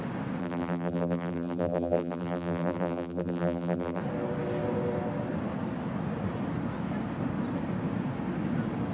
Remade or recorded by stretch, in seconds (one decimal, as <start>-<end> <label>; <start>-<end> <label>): 0.0-0.4 recorded; 0.4-4.0 remade; 4.0-8.9 recorded

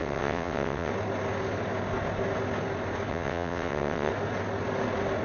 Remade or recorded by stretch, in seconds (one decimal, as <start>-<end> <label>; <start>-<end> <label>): 0.0-0.9 remade; 0.9-3.1 recorded; 3.1-4.1 remade; 4.1-5.2 recorded

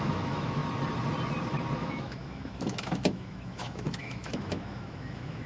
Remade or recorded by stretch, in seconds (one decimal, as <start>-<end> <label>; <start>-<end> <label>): 0.0-0.6 remade; 0.6-1.8 recorded; 1.8-5.5 remade

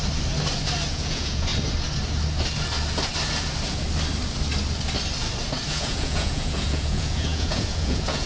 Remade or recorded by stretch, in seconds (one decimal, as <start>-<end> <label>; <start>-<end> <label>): 0.0-0.9 recorded; 0.9-1.5 remade; 1.5-5.7 recorded; 5.7-8.3 remade

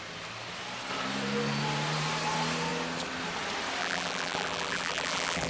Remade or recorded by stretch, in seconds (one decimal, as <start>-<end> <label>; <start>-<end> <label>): 0.0-3.8 recorded; 3.8-5.5 remade

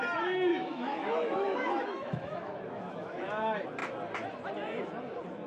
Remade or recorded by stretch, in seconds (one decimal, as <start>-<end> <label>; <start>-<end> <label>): 0.0-0.5 recorded; 0.5-3.3 remade; 3.3-5.5 recorded